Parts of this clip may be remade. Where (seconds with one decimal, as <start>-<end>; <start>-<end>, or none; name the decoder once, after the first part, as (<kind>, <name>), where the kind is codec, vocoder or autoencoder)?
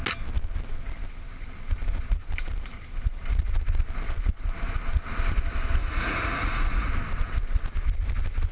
5.8-6.9 (vocoder, Vocos)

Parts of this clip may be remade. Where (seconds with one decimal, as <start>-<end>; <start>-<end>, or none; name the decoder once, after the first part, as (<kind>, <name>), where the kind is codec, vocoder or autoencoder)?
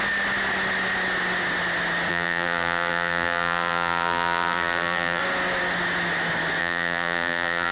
2.1-5.2 (vocoder, BigVGAN v2); 6.6-7.7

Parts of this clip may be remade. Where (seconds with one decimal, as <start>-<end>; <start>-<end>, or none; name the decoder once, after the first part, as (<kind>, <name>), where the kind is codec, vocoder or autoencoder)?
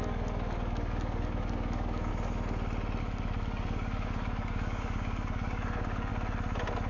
0.0-2.1 (codec, DAC); 3.0-6.1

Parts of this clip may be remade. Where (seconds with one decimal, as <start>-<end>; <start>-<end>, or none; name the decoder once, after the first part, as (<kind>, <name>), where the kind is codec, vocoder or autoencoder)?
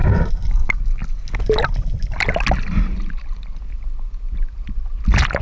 none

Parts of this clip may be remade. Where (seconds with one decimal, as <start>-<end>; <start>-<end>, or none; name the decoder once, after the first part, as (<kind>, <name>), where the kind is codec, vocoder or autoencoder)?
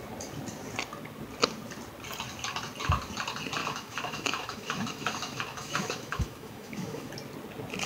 3.6-7.1 (autoencoder, DAC-VAE)